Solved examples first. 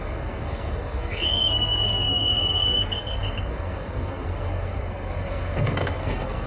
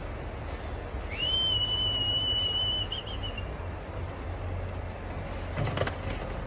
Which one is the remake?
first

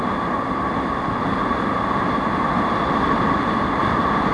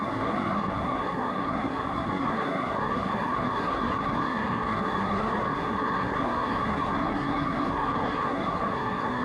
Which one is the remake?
second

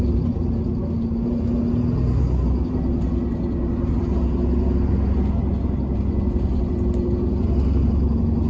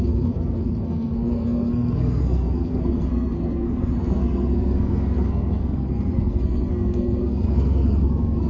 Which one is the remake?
second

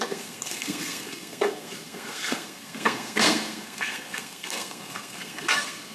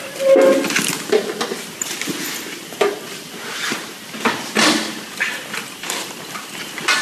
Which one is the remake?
first